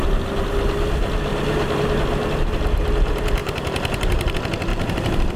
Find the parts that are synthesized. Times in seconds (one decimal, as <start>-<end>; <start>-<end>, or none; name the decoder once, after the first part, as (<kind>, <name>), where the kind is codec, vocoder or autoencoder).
1.3-1.8 (vocoder, BigVGAN v2); 3.4-4.3; 4.7-5.4